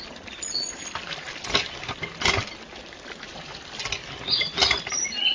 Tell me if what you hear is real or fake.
real